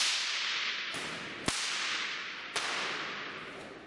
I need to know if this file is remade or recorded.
recorded